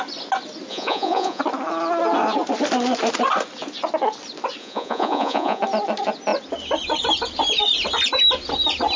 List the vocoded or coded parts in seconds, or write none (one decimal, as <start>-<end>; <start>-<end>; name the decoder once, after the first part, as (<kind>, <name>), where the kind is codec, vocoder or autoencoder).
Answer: 0.7-1.4 (vocoder, Vocos); 4.6-5.6